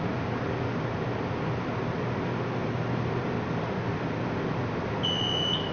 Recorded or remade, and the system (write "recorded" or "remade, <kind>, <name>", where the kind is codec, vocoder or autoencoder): recorded